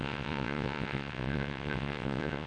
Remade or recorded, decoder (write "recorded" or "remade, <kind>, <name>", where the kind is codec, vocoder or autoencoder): remade, vocoder, WaveNeXt